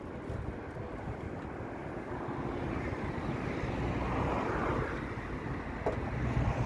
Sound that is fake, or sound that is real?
real